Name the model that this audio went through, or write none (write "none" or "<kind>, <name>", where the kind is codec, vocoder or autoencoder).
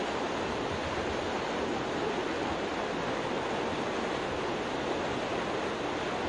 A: none